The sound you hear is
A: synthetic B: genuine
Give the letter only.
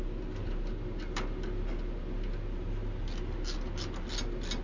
B